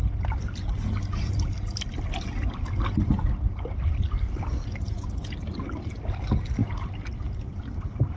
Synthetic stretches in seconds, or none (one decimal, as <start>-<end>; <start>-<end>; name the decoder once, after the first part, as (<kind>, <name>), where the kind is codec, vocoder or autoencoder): none